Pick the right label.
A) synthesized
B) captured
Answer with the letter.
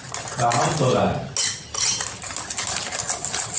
B